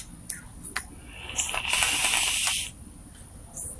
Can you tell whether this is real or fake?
real